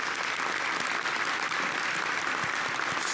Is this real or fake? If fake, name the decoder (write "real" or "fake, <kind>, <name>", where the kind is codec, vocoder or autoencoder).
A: real